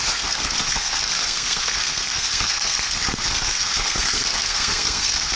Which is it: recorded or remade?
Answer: remade